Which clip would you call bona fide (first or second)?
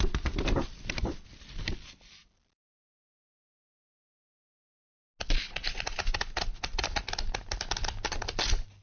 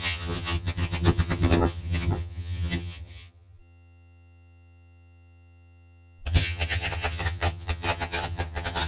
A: first